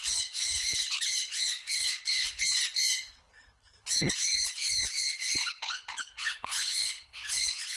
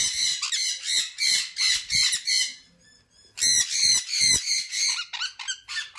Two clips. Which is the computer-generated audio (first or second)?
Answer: first